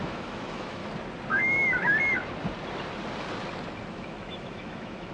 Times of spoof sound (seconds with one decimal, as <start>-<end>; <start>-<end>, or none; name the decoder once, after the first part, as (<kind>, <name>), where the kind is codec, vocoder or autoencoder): 0.0-0.8 (autoencoder, DAC-VAE); 1.3-1.9; 3.9-5.1

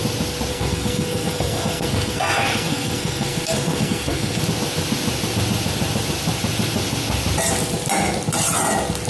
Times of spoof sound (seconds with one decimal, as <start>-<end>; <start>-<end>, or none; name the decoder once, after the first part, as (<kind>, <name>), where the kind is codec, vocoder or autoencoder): 0.5-4.4 (codec, SNAC)

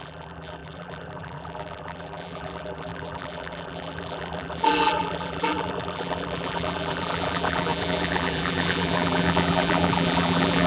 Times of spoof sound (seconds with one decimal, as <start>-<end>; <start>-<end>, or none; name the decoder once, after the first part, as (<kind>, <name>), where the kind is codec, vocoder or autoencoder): 0.0-10.7 (vocoder, BigVGAN v2)

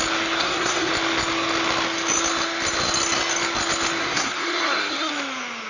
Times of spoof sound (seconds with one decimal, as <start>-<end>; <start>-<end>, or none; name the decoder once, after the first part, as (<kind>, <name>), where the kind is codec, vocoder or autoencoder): 0.4-0.9 (codec, SNAC); 4.0-5.1

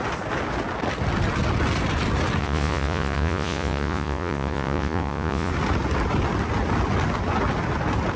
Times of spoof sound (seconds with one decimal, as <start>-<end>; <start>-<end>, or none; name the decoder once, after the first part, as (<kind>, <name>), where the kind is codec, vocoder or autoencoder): 2.4-5.5 (vocoder, Vocos)

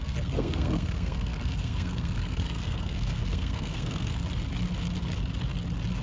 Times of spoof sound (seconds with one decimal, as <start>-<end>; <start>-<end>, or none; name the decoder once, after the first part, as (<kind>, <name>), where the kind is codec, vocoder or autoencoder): 0.0-4.2 (codec, SNAC)